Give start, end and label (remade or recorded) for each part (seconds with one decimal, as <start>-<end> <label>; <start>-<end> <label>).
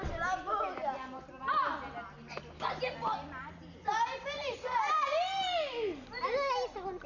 0.0-7.1 recorded